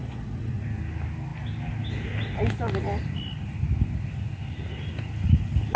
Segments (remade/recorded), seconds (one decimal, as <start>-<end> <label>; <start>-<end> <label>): 0.0-0.6 remade; 0.6-5.8 recorded